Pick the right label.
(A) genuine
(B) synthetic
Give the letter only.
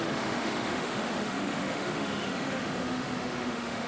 B